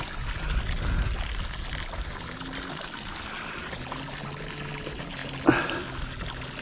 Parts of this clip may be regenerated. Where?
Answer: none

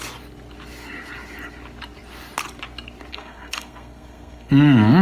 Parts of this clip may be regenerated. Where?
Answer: 3.1-4.5 (codec, SNAC)

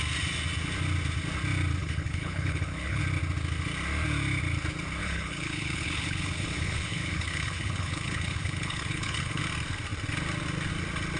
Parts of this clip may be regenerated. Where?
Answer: 1.8-3.0 (codec, HILCodec); 5.0-9.4

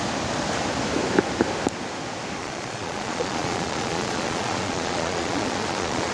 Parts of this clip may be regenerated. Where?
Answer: 2.4-6.1 (vocoder, Vocos)

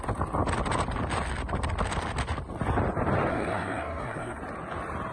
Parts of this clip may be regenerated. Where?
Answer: 3.3-4.4 (codec, SNAC)